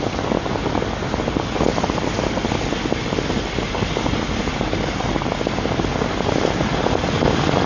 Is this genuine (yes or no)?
yes